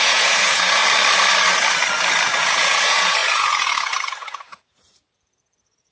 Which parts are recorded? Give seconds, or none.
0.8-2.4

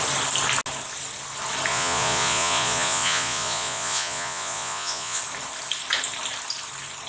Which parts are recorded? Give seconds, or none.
0.0-1.7; 5.2-7.1